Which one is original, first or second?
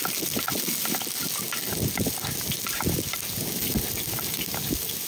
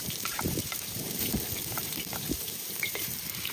first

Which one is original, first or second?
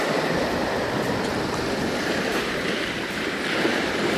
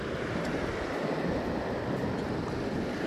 second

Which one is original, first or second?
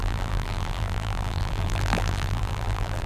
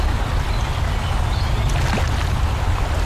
second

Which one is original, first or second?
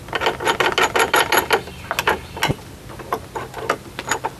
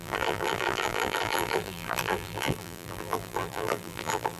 first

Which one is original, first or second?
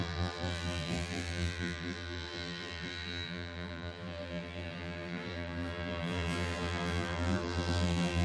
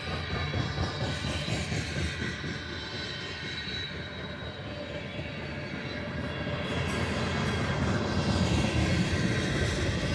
second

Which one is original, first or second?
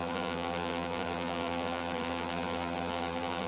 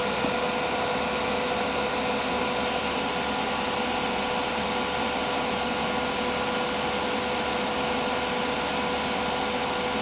second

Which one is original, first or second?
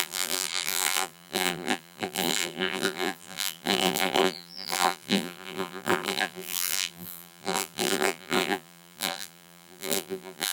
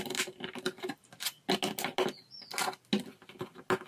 second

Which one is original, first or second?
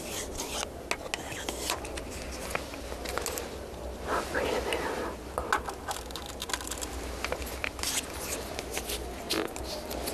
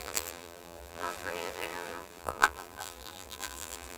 first